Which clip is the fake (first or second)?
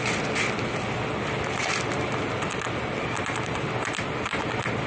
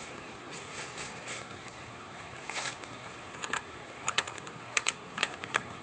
second